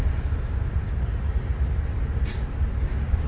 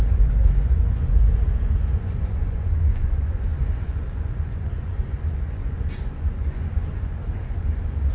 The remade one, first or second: second